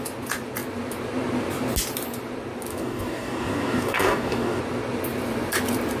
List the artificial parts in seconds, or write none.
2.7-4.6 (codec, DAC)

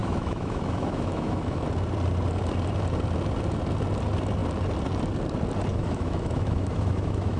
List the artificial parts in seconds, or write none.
0.0-1.6 (autoencoder, DAC-VAE); 5.7-7.4

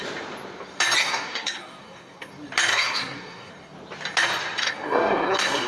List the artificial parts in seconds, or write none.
1.0-2.3 (codec, SNAC); 2.7-3.5; 4.6-5.7

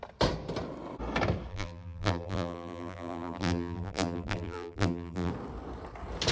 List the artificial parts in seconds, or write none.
1.5-5.3 (vocoder, BigVGAN v2)

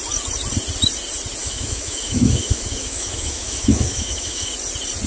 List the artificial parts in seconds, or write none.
1.4-4.5 (autoencoder, DAC-VAE)

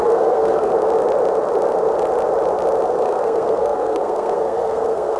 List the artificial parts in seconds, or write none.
0.0-0.7 (codec, SNAC); 3.0-5.2

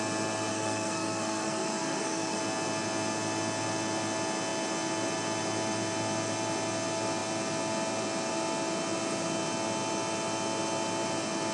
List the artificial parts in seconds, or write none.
0.5-2.4 (codec, SNAC)